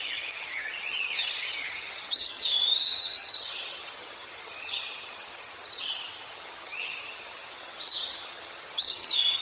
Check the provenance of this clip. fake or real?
fake